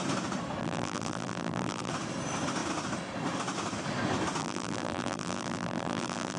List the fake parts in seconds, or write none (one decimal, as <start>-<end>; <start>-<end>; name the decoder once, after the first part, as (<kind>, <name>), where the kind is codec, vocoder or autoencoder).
0.6-1.9 (vocoder, BigVGAN v2); 4.4-6.4